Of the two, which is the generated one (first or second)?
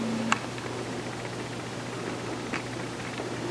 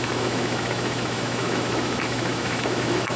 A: second